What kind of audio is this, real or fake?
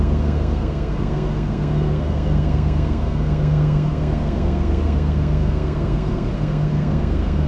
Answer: fake